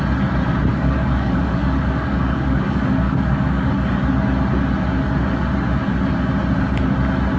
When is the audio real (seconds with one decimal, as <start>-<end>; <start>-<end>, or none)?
0.0-0.7; 3.7-7.4